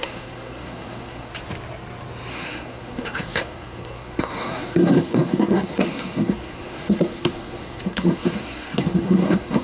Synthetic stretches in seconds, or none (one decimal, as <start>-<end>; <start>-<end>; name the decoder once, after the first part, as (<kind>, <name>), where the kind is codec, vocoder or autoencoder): 0.0-1.3 (codec, SNAC); 2.3-9.6